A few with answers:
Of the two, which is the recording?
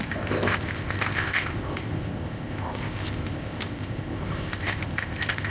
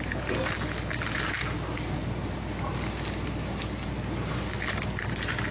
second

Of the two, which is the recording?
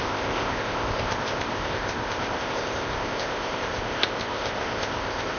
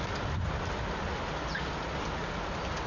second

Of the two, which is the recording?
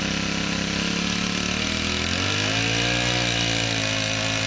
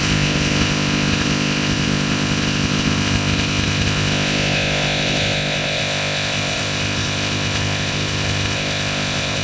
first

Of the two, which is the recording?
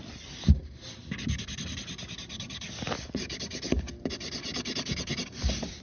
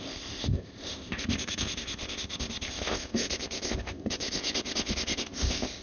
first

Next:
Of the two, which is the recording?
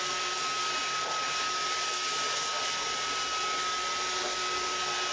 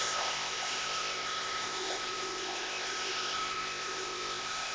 first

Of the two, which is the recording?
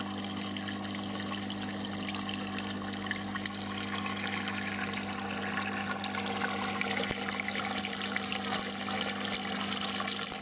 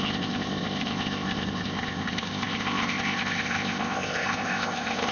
first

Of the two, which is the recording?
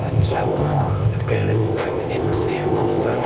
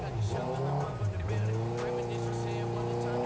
second